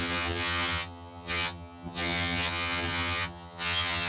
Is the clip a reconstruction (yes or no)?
yes